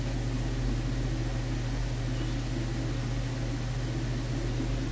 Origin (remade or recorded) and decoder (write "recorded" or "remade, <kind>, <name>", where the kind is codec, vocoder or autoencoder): recorded